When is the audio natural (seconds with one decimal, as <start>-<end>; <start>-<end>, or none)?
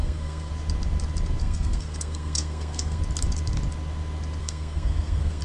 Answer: 0.5-1.4; 3.0-4.4